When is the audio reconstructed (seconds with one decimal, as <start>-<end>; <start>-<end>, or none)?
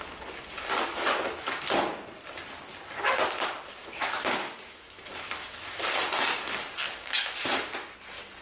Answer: 0.9-1.6; 3.8-5.8; 6.8-7.3